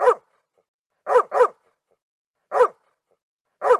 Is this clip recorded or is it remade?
recorded